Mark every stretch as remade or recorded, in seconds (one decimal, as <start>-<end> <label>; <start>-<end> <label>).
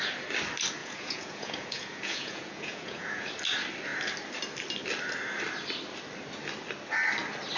0.0-0.8 recorded; 0.8-3.3 remade; 3.3-7.6 recorded